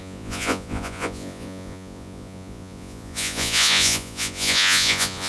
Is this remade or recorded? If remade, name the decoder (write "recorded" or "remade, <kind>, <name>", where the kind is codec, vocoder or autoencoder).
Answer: remade, vocoder, Vocos